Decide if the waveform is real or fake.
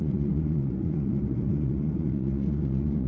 fake